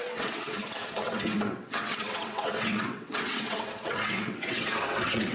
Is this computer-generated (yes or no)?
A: yes